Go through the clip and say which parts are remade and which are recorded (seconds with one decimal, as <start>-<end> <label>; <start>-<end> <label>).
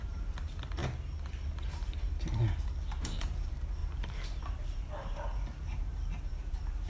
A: 0.0-0.8 remade; 0.8-2.9 recorded; 2.9-6.9 remade